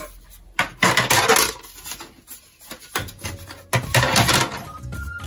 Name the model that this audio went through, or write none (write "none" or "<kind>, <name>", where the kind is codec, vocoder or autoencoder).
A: none